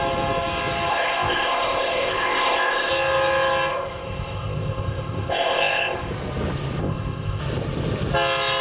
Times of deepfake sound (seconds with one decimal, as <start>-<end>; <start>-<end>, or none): 0.9-2.9; 3.7-6.1; 6.8-7.4